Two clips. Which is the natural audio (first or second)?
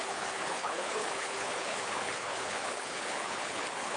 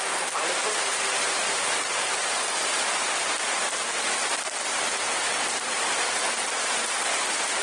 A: second